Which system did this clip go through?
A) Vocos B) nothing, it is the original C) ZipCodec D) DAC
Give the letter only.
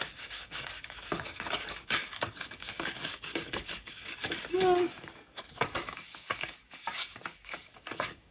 D